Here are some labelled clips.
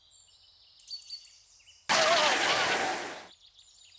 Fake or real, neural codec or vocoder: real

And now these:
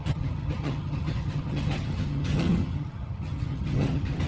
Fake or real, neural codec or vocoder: fake, vocoder, HiFi-GAN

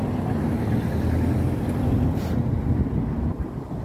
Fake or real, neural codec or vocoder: real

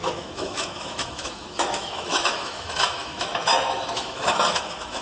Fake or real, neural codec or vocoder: fake, autoencoder, DAC-VAE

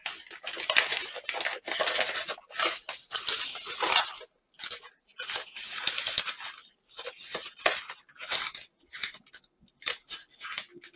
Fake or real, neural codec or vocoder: real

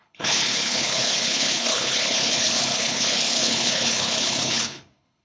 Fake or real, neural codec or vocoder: fake, codec, HILCodec